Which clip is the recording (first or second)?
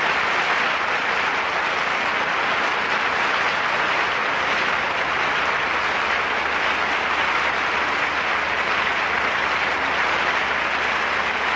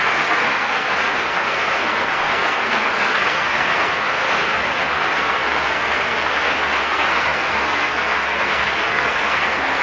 first